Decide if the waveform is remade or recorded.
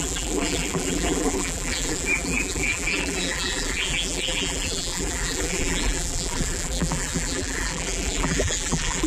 remade